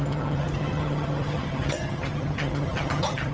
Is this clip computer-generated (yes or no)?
yes